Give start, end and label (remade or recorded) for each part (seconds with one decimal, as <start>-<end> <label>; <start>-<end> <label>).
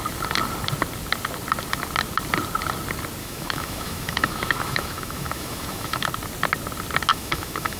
0.0-3.2 recorded; 3.2-6.1 remade; 6.1-7.1 recorded; 7.1-7.8 remade